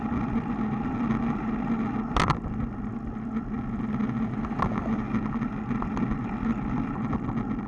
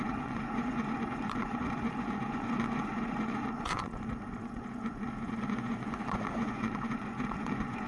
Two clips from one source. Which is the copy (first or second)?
second